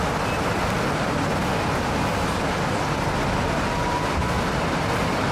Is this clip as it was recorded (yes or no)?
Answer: yes